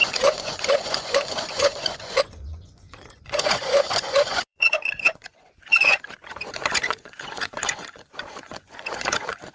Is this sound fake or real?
fake